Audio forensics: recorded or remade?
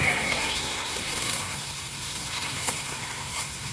remade